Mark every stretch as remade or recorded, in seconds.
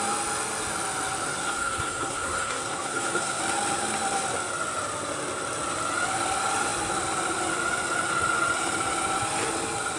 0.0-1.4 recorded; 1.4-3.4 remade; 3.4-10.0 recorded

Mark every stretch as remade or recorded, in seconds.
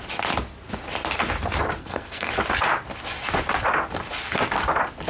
0.0-1.8 recorded; 1.8-2.3 remade; 2.3-5.1 recorded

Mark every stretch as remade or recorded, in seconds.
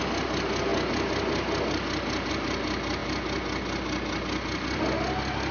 0.0-5.5 recorded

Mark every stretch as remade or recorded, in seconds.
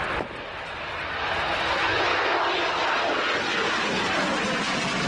0.0-5.1 recorded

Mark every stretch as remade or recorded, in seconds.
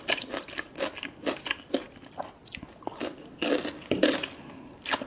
0.0-5.1 recorded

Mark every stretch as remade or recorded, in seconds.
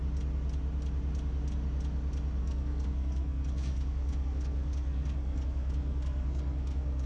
0.0-2.4 recorded; 2.4-7.1 remade